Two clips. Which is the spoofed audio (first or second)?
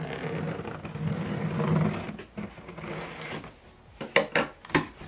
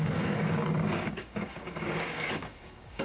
second